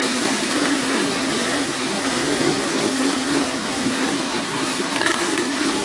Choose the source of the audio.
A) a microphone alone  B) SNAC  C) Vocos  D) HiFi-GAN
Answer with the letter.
B